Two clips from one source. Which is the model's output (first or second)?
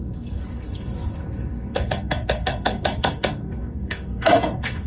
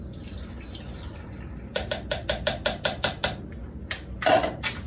first